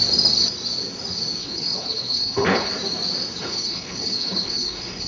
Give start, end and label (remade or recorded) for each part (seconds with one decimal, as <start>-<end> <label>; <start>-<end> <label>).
0.0-1.4 recorded; 1.4-2.7 remade; 2.7-3.4 recorded; 3.4-5.1 remade